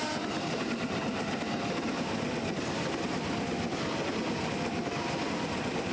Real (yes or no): yes